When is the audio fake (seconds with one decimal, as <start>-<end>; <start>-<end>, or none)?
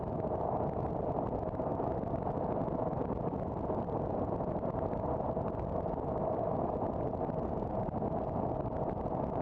1.7-6.6